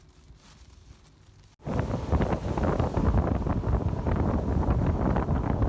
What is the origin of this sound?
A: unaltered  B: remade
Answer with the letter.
A